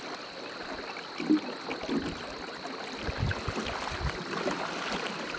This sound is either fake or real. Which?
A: real